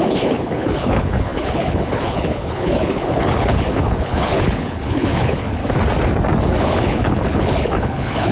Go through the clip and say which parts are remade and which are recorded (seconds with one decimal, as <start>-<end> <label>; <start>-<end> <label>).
0.0-5.6 remade; 5.6-6.6 recorded; 6.6-8.3 remade